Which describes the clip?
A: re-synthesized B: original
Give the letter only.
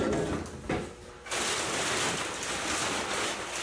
B